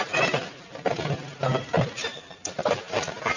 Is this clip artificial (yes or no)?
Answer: yes